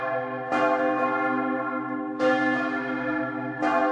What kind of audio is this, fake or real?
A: real